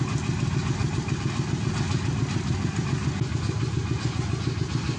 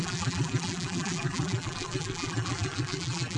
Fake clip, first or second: second